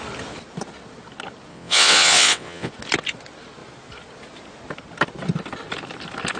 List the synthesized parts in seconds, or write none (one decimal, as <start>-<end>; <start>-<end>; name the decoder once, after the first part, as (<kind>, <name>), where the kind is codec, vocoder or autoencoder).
1.5-2.7 (vocoder, WaveNeXt)